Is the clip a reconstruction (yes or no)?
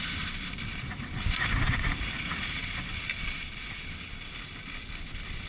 no